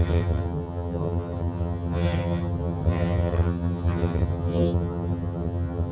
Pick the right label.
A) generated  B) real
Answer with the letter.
A